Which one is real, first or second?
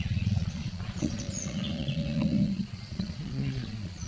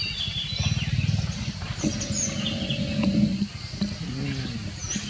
second